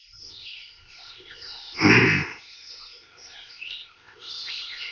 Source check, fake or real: fake